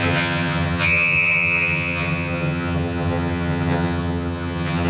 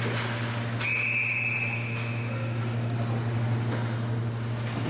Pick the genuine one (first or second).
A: second